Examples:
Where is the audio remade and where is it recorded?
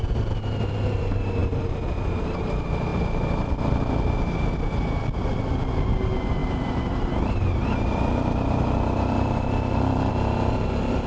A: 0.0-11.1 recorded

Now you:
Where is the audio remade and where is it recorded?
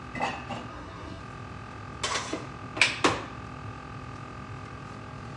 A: 0.0-0.7 recorded; 0.7-1.2 remade; 1.2-5.4 recorded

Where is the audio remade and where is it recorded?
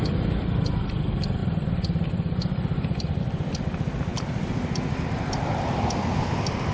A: 0.0-6.7 remade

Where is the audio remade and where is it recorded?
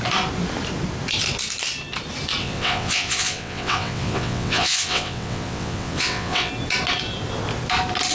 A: 0.0-2.4 recorded; 2.4-6.5 remade; 6.5-8.1 recorded